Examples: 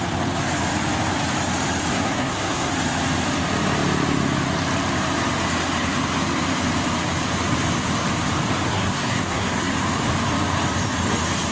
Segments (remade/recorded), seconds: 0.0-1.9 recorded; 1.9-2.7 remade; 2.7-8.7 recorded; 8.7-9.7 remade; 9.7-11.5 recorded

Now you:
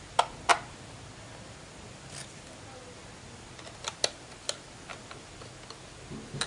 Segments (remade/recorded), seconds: 0.0-6.5 recorded

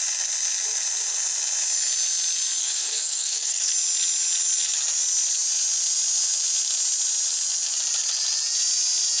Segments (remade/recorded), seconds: 0.0-2.6 recorded; 2.6-3.7 remade; 3.7-9.2 recorded

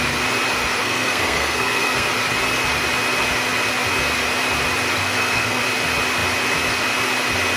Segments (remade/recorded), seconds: 0.0-0.8 recorded; 0.8-2.1 remade; 2.1-5.0 recorded; 5.0-5.6 remade; 5.6-7.6 recorded

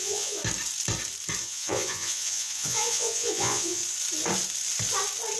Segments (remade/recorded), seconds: 0.0-0.4 remade; 0.4-1.4 recorded; 1.4-3.8 remade; 3.8-5.4 recorded